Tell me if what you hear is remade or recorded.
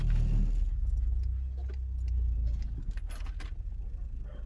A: recorded